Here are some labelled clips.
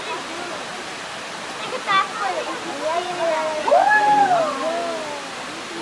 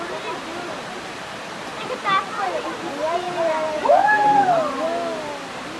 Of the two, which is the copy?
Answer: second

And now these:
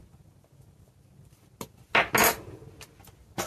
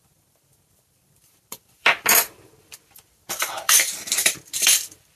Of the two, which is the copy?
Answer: second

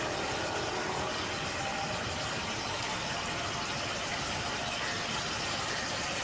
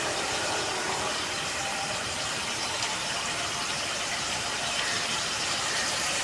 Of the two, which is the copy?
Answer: second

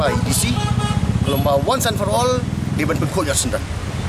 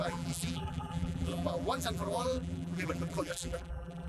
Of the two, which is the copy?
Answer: second